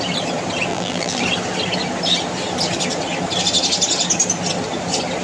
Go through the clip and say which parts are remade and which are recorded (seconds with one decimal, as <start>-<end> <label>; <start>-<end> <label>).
0.0-0.7 recorded; 0.7-1.2 remade; 1.2-5.2 recorded